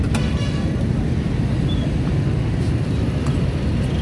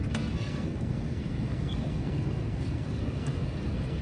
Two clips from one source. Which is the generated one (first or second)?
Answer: second